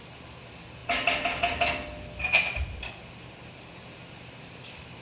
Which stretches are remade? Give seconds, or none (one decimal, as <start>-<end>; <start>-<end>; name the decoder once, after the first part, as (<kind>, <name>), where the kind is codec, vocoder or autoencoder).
none